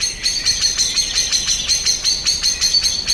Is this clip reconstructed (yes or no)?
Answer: no